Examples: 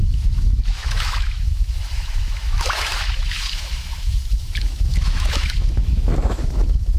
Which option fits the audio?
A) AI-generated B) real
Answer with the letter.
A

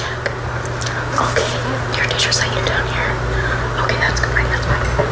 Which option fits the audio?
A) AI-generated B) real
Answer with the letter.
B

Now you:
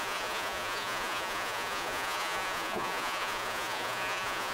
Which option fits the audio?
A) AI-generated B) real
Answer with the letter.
A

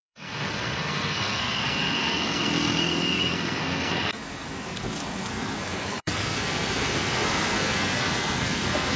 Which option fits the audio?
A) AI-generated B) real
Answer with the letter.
A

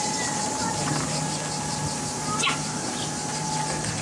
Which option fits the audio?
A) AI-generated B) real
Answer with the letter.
B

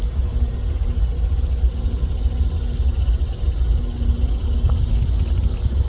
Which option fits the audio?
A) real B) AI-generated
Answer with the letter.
A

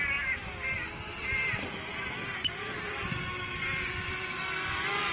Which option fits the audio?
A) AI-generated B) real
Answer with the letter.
B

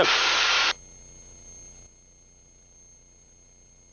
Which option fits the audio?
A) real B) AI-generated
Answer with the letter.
A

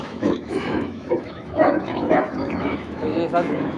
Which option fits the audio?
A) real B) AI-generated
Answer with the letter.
B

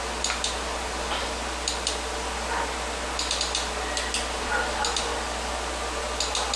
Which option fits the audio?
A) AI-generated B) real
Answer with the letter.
B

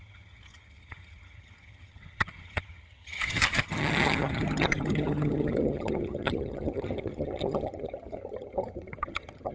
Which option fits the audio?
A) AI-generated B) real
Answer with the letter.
A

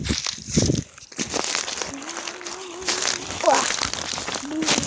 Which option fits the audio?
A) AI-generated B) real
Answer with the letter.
B